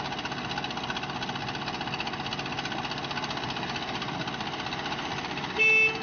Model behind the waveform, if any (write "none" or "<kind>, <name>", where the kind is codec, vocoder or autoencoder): none